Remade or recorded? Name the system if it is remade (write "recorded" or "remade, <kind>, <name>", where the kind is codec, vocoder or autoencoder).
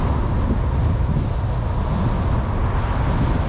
recorded